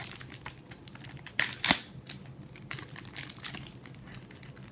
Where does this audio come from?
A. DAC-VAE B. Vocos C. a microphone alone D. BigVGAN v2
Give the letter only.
C